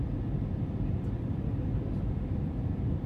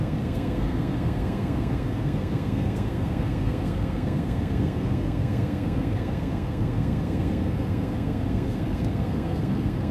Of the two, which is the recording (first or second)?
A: first